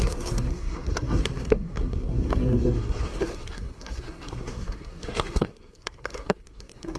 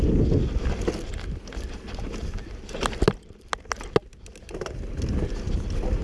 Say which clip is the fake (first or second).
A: first